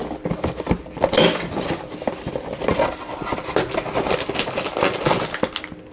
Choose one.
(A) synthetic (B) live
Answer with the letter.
B